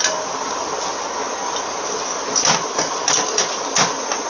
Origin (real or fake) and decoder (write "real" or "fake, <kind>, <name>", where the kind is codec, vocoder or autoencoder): real